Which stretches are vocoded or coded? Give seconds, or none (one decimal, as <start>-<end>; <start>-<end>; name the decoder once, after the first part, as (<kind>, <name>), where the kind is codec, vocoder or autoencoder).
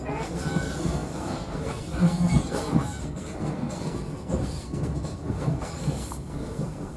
0.0-7.0 (codec, SNAC)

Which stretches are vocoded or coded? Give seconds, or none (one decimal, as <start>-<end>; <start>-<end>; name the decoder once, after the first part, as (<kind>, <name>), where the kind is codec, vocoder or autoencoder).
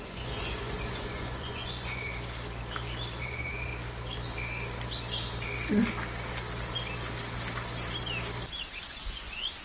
0.0-2.1 (vocoder, Vocos); 3.2-3.7; 8.7-9.6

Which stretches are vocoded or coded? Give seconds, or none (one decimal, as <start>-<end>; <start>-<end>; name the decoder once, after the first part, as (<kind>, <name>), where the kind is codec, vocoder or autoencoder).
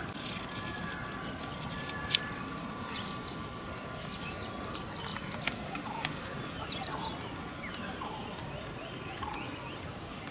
none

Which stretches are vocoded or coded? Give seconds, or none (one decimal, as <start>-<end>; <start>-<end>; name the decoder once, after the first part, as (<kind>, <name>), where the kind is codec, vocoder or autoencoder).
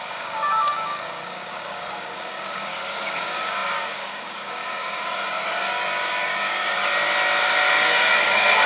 0.0-6.8 (codec, DAC); 7.4-8.7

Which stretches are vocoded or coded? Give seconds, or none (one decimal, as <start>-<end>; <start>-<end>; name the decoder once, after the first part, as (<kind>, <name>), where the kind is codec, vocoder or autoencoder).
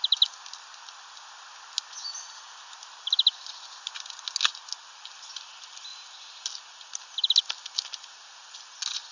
none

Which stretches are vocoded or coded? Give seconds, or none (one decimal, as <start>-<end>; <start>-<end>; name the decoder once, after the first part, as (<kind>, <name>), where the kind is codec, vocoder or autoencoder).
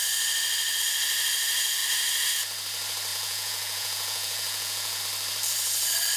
3.1-5.0 (vocoder, Vocos)